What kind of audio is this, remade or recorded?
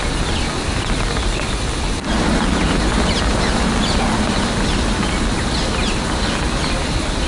recorded